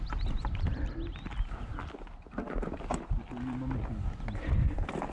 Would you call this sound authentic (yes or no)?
yes